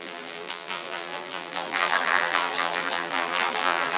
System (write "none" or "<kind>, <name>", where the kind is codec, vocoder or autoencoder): vocoder, BigVGAN v2